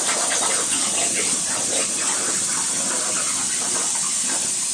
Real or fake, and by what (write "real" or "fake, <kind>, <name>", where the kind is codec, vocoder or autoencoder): real